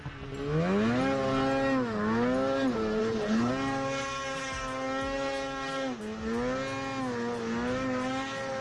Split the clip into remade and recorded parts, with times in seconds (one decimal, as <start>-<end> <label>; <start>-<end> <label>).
0.0-3.0 recorded; 3.0-3.5 remade; 3.5-8.6 recorded